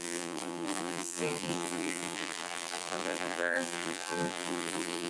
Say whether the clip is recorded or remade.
remade